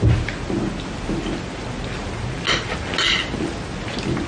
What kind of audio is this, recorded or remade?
recorded